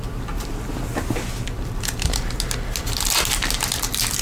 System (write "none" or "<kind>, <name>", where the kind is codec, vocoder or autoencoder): none